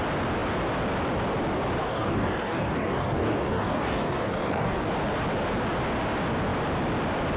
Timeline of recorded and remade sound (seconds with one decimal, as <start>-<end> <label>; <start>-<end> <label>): 0.0-1.8 recorded; 1.8-4.9 remade; 4.9-7.4 recorded